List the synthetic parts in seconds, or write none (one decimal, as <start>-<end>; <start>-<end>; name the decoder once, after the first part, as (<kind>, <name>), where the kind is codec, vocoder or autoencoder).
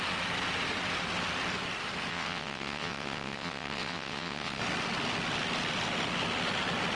2.1-4.6 (vocoder, WaveNeXt)